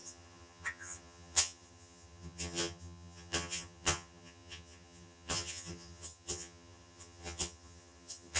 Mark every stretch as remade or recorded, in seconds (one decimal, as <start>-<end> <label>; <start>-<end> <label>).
0.0-8.4 remade